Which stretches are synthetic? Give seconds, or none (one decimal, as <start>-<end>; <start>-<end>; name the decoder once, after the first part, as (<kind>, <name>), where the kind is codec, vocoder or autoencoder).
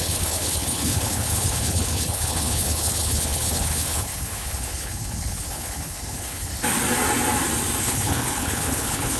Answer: 0.0-6.5 (codec, HILCodec); 7.8-9.2